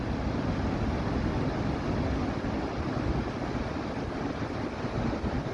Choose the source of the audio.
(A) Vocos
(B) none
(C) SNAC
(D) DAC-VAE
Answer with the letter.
B